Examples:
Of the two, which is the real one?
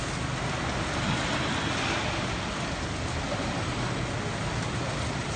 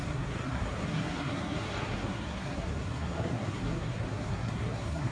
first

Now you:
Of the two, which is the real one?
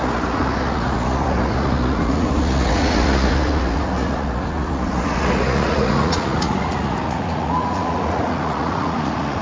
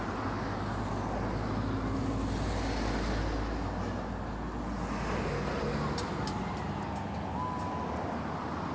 second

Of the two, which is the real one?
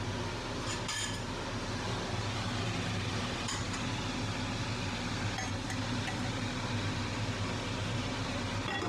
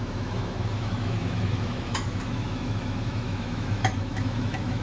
first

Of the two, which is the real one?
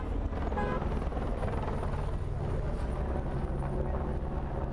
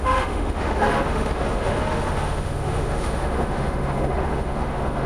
first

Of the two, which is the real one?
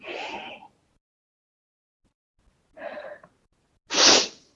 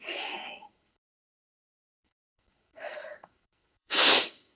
first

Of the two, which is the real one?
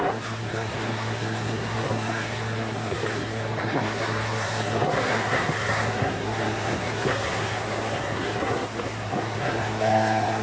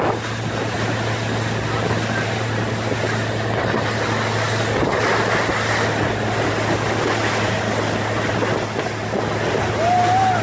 second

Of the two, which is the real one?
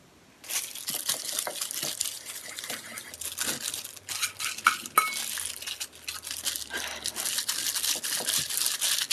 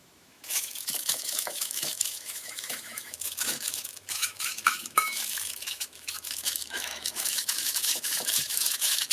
first